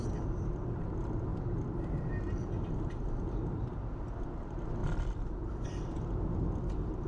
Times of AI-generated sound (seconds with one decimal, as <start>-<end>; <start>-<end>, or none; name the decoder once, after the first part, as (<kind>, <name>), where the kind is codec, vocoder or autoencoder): 4.8-6.0 (vocoder, BigVGAN v2)

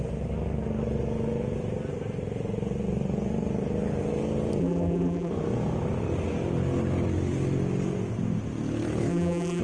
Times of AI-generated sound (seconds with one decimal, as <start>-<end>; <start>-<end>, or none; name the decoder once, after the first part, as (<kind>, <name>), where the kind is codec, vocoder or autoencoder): 4.6-5.3 (vocoder, BigVGAN v2); 9.1-9.6

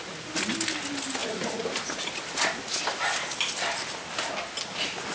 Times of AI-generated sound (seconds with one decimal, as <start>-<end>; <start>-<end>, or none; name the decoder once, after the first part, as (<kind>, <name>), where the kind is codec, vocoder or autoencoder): none

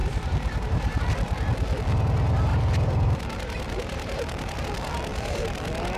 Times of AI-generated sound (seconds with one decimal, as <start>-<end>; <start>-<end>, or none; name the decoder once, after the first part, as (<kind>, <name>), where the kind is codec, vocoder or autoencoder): 0.0-1.0 (vocoder, BigVGAN v2); 2.5-4.6

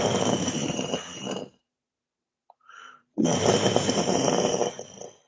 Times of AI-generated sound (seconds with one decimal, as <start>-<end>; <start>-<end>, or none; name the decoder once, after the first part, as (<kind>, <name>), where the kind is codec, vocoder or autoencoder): 0.0-4.6 (vocoder, BigVGAN v2)

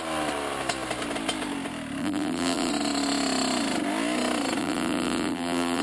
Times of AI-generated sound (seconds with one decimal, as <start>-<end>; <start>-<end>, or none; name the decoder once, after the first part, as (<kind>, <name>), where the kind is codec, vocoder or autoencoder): 2.0-2.7 (vocoder, BigVGAN v2); 4.6-5.8

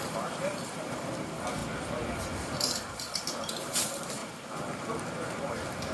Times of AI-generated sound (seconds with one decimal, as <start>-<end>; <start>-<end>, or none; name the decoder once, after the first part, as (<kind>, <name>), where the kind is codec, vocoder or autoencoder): 0.0-1.6 (vocoder, BigVGAN v2); 2.2-4.2; 5.5-5.9

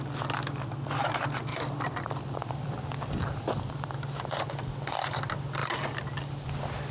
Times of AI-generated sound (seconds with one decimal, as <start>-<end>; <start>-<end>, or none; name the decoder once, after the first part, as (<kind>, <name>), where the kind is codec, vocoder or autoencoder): 1.5-4.5 (vocoder, BigVGAN v2)